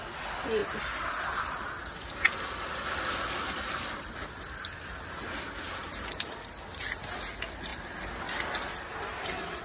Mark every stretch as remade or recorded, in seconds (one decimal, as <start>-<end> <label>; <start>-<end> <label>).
0.0-9.6 recorded